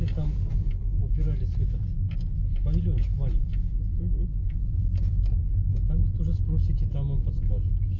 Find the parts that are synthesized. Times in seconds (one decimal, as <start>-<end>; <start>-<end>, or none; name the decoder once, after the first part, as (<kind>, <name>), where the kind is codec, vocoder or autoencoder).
none